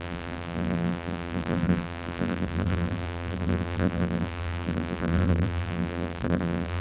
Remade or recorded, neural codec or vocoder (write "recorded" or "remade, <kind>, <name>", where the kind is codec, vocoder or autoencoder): remade, vocoder, BigVGAN v2